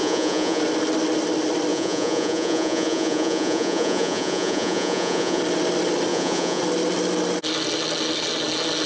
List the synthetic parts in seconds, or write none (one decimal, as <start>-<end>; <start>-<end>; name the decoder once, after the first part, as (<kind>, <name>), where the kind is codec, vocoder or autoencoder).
0.0-0.6 (vocoder, Vocos); 1.7-5.4; 6.1-6.6